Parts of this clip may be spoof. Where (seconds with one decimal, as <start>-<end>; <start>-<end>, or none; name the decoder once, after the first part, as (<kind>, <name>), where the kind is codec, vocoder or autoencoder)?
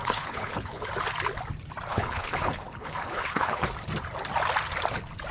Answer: 0.0-0.9 (codec, HILCodec); 1.9-3.7